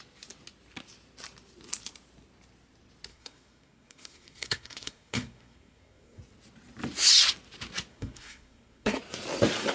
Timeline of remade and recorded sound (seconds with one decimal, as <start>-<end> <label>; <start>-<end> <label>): 0.0-3.1 recorded; 3.1-6.2 remade; 6.2-7.9 recorded; 7.9-9.0 remade; 9.0-9.7 recorded